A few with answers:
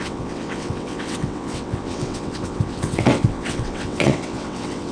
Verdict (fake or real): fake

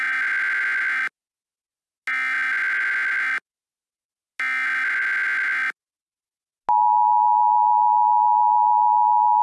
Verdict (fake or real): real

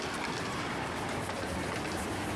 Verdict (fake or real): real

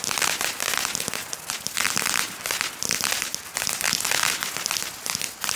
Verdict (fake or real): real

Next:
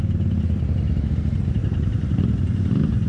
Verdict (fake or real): fake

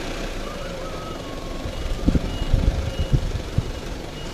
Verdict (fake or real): fake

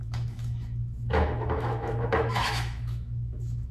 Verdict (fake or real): fake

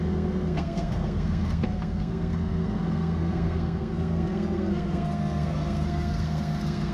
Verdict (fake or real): fake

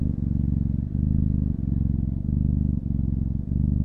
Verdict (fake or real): real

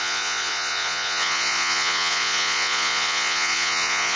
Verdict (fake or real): fake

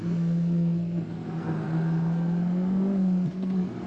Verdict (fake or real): fake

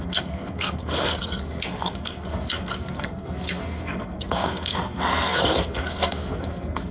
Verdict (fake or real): fake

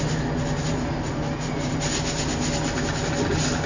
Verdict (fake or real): real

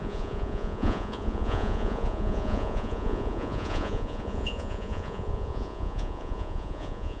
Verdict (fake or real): fake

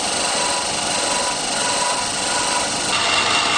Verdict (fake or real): real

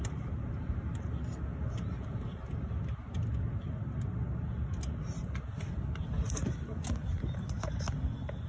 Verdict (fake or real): real